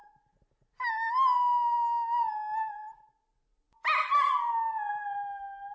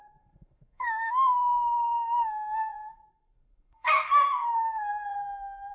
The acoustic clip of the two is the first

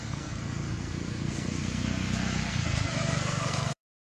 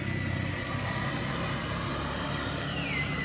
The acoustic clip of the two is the second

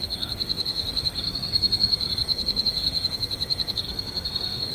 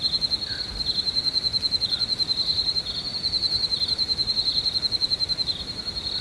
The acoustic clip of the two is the second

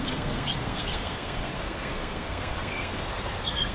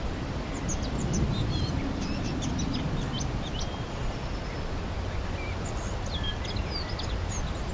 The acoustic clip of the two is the second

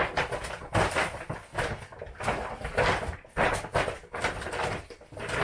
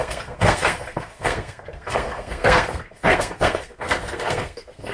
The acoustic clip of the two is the first